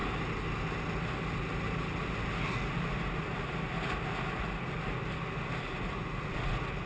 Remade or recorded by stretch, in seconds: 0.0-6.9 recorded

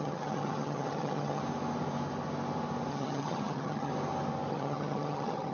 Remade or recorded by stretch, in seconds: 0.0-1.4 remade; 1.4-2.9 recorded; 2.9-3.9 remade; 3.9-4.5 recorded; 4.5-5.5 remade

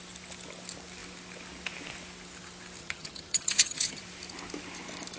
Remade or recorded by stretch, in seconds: 0.0-2.8 recorded; 2.8-4.0 remade; 4.0-5.2 recorded

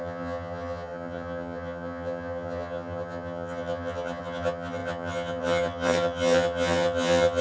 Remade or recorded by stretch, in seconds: 0.0-7.4 remade

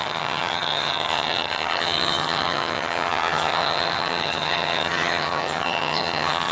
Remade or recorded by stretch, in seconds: 0.0-6.5 remade

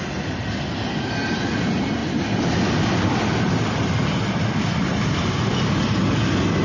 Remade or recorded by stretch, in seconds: 0.0-6.6 recorded